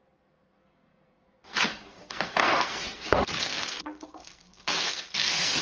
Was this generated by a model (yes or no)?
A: yes